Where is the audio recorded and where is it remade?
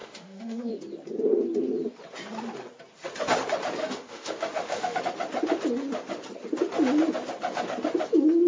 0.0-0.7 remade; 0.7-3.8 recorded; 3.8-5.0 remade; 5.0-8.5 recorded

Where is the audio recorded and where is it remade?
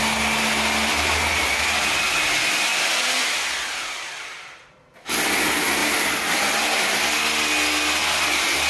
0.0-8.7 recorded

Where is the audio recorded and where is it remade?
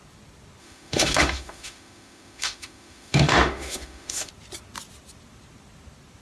0.0-0.6 recorded; 0.6-4.3 remade; 4.3-6.2 recorded